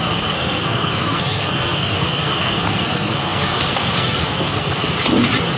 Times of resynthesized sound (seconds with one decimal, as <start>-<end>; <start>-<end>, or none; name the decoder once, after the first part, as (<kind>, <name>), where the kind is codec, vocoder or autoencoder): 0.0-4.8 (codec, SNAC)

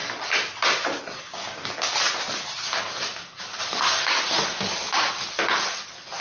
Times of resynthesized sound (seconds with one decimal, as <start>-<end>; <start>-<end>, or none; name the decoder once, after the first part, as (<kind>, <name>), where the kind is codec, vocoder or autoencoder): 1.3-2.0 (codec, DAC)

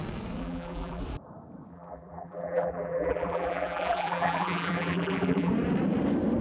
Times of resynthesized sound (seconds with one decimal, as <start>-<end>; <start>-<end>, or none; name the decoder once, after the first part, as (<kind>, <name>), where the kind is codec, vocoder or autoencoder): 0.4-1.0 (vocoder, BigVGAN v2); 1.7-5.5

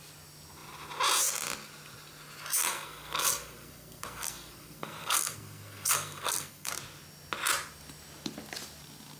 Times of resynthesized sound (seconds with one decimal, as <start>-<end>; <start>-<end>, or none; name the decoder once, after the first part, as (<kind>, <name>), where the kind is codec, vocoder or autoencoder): 2.6-6.7 (codec, SNAC)

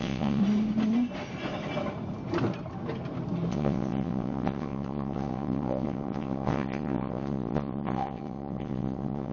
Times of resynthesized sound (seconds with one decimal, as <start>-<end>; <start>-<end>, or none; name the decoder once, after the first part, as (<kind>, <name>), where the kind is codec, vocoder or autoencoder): 0.0-0.4 (vocoder, WaveNeXt); 3.5-9.3

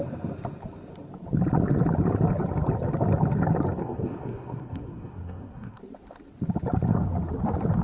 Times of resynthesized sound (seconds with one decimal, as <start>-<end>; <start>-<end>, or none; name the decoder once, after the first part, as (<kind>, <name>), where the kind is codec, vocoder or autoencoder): 3.8-5.8 (codec, SNAC)

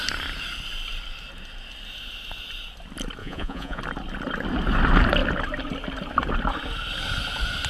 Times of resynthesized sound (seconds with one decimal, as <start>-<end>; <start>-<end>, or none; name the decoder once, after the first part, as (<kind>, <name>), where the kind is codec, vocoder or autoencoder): 3.2-3.8 (vocoder, Vocos)

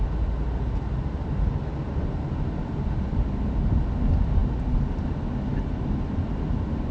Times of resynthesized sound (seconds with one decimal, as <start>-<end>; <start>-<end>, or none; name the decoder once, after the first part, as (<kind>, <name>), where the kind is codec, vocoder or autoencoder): none